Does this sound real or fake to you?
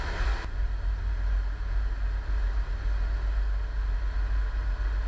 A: real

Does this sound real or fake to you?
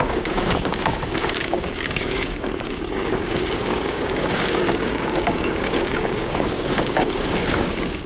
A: fake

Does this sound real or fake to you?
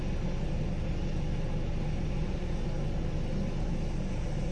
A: real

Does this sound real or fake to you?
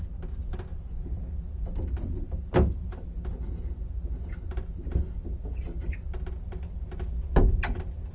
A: real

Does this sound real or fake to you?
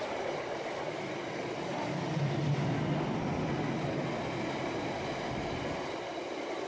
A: real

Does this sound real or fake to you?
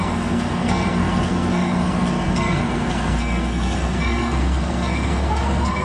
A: fake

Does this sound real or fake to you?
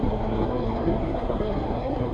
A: fake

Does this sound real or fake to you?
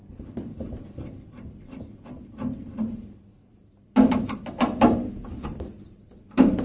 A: fake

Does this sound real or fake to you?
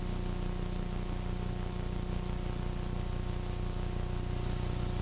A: real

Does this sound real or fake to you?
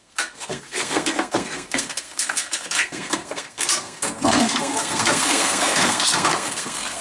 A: fake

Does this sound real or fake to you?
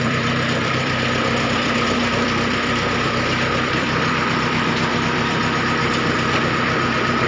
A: fake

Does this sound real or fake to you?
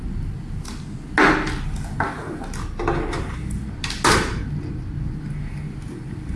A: real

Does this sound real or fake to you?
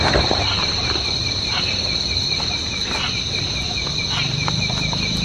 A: real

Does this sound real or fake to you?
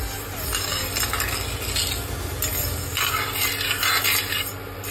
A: real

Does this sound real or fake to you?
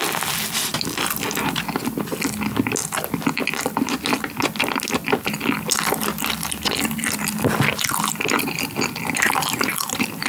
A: real